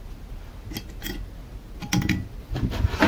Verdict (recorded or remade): recorded